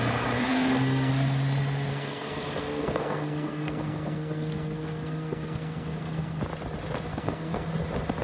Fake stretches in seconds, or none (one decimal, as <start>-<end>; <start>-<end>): 0.5-1.1; 1.9-6.4; 7.1-7.7